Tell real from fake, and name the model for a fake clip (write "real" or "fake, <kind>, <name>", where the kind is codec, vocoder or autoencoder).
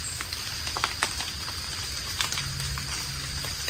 real